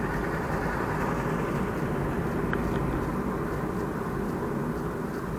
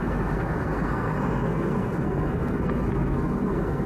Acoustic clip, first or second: first